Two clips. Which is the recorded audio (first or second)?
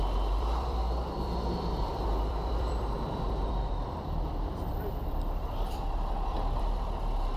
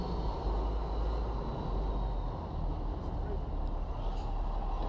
second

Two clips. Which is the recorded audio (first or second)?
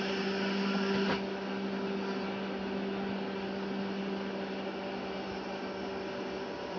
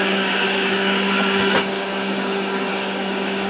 first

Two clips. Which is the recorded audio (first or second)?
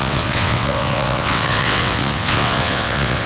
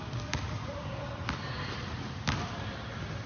second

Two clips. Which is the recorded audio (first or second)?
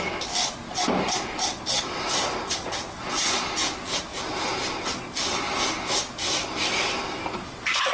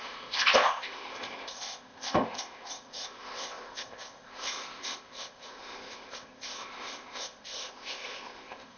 first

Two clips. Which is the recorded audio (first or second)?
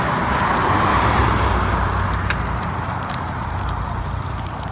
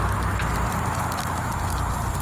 second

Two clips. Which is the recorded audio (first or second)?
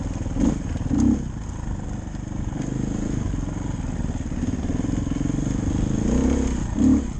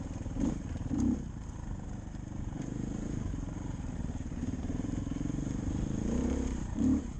first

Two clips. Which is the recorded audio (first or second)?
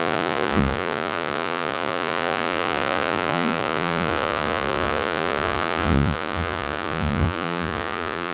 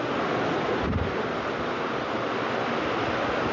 second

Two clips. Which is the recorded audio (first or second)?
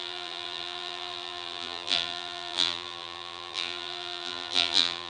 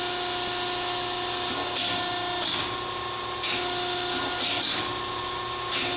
second